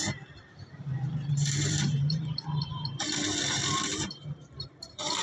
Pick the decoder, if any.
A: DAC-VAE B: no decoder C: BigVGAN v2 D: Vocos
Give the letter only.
C